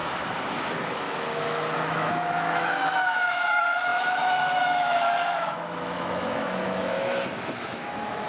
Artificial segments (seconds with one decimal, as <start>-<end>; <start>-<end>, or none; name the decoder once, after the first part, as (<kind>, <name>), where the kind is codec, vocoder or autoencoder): 0.8-8.3 (autoencoder, DAC-VAE)